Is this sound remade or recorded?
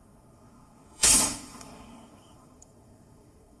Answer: remade